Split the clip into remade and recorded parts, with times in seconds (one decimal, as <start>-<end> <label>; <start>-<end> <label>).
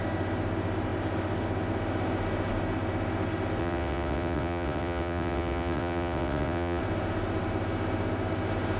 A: 0.0-3.6 recorded; 3.6-6.8 remade; 6.8-8.8 recorded